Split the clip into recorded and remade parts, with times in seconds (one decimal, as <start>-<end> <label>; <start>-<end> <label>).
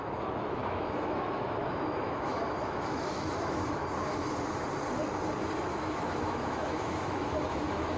0.0-3.8 remade; 3.8-5.7 recorded; 5.7-8.0 remade